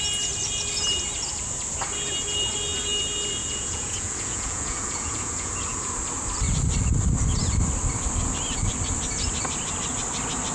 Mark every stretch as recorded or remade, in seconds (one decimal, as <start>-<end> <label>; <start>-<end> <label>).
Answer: 0.0-3.4 recorded; 3.4-5.8 remade; 5.8-10.5 recorded